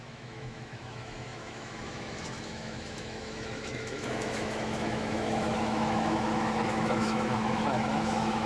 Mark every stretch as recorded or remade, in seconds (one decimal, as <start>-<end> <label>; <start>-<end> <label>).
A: 0.0-8.5 remade